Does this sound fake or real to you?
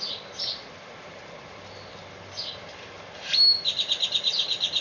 real